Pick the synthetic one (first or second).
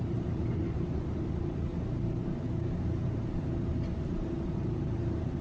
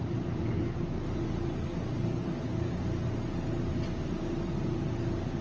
first